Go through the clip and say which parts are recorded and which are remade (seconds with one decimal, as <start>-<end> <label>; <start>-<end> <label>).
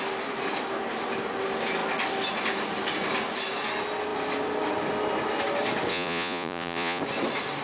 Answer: 0.0-5.9 recorded; 5.9-7.0 remade; 7.0-7.6 recorded